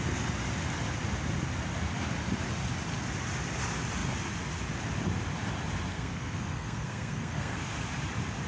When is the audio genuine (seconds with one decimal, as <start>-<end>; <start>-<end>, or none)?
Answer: 0.0-5.9; 7.7-8.5